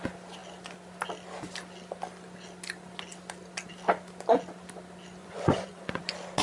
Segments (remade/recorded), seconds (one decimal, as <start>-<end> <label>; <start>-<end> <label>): 0.0-5.2 recorded; 5.2-6.0 remade; 6.0-6.4 recorded